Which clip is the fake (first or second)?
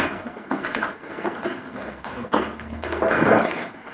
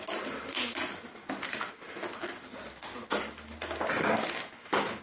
first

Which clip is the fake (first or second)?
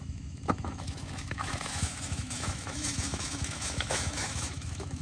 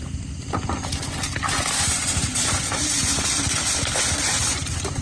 first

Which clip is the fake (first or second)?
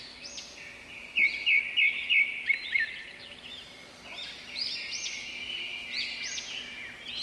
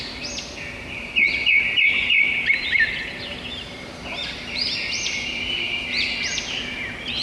second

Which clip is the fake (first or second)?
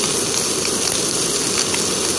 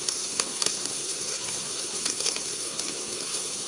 second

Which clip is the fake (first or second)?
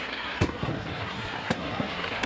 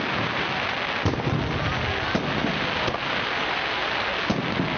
first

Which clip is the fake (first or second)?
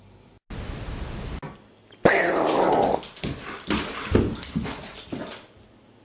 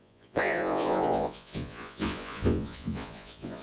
second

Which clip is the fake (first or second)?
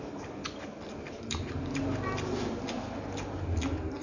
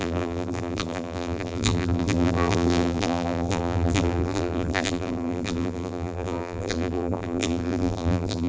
second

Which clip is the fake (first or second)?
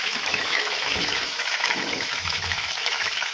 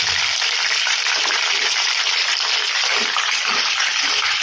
first